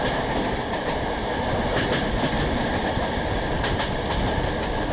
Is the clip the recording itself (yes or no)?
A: yes